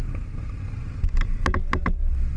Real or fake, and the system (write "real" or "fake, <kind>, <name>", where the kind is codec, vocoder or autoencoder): real